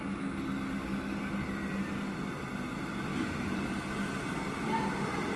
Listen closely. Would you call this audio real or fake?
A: real